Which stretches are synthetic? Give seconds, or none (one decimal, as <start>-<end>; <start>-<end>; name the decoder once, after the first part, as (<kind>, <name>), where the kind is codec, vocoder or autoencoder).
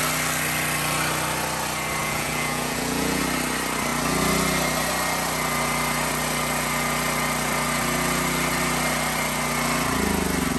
2.0-3.2 (vocoder, Vocos)